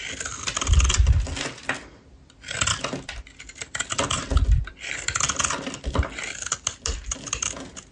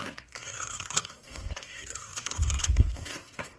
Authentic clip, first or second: first